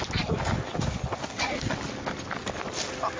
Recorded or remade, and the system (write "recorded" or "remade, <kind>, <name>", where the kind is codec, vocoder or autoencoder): recorded